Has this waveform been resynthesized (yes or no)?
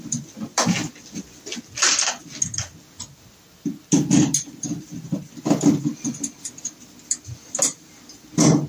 no